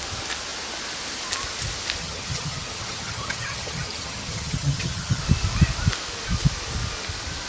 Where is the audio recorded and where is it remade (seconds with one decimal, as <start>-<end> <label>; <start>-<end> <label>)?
0.0-2.0 recorded; 2.0-5.2 remade; 5.2-7.5 recorded